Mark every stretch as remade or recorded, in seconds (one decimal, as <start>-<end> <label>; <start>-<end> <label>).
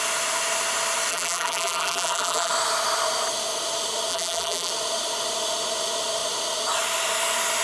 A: 0.0-1.1 recorded; 1.1-2.5 remade; 2.5-4.1 recorded; 4.1-4.7 remade; 4.7-7.6 recorded